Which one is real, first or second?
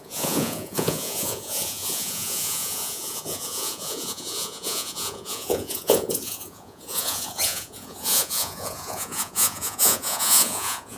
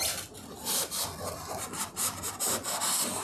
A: second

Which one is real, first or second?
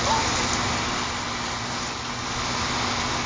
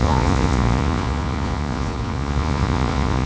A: first